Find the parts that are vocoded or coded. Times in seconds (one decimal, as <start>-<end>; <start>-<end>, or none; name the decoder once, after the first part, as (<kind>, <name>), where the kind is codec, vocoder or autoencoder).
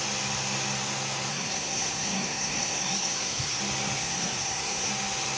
1.3-3.6 (codec, SNAC); 4.0-4.9